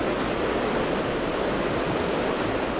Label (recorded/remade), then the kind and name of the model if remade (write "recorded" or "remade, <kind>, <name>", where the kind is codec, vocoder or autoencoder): recorded